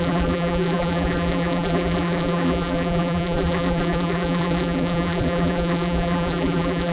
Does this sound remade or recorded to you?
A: remade